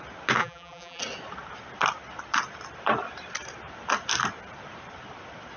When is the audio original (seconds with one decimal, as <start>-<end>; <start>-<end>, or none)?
0.0-0.4; 1.0-5.6